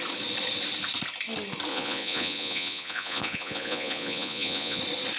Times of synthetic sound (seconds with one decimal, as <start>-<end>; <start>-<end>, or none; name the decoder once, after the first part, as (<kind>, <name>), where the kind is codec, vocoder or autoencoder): 1.7-4.8 (vocoder, Vocos)